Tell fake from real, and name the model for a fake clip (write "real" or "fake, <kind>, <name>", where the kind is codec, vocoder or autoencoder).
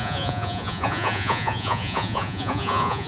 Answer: fake, vocoder, Vocos